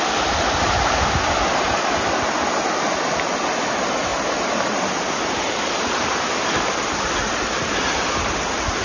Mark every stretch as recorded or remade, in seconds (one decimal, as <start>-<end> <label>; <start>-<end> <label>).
0.0-8.8 recorded